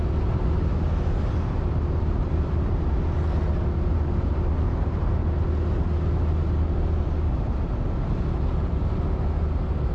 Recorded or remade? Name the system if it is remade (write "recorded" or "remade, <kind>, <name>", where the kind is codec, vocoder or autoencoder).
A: recorded